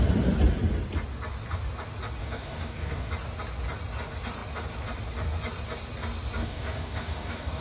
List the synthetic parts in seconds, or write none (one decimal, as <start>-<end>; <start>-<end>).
2.2-3.1; 6.4-7.6